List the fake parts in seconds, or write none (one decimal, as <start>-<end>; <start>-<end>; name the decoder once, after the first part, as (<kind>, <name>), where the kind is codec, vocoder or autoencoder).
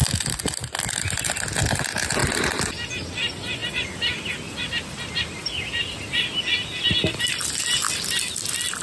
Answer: 2.2-2.9 (vocoder, BigVGAN v2)